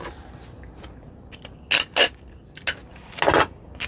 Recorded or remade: recorded